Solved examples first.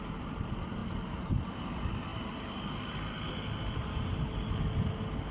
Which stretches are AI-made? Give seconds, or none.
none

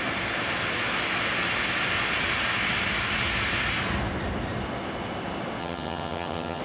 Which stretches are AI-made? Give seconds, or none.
5.6-6.6 (vocoder, HiFi-GAN)

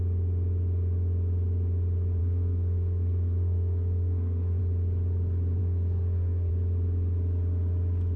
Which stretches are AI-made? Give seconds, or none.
2.2-4.6 (codec, SNAC); 5.6-6.5

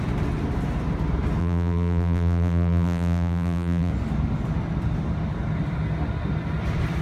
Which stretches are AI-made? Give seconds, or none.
1.4-3.9 (vocoder, BigVGAN v2)

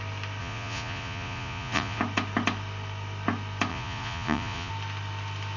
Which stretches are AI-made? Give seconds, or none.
0.4-2.0 (vocoder, Vocos); 3.7-4.7

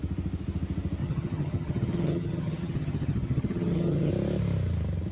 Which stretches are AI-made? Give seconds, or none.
1.0-4.1 (vocoder, HiFi-GAN)

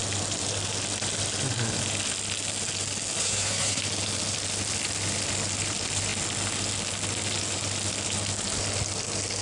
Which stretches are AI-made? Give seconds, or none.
3.2-3.8 (codec, SNAC)